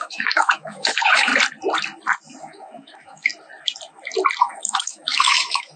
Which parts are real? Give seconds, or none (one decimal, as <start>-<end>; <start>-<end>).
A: 1.3-2.4; 3.3-4.4